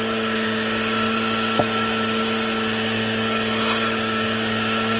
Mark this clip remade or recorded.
recorded